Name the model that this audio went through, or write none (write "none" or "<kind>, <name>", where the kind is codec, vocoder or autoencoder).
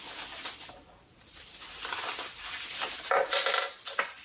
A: none